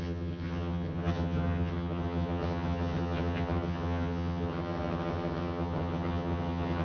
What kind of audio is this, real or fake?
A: fake